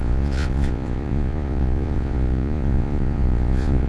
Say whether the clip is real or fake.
fake